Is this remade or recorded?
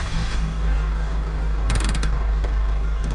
remade